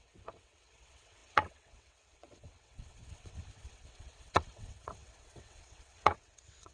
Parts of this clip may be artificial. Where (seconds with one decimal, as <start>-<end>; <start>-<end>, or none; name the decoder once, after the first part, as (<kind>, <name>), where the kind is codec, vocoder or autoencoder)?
0.0-6.7 (vocoder, WaveNeXt)